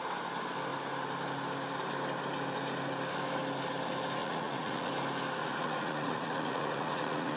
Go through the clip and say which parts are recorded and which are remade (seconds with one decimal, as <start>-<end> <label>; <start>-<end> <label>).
0.0-4.2 recorded; 4.2-4.9 remade; 4.9-5.4 recorded; 5.4-7.4 remade